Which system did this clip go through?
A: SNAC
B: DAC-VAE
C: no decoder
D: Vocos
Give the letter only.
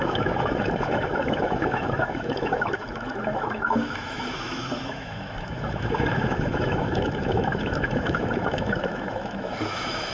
B